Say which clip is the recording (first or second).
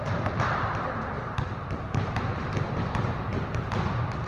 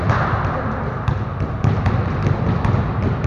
second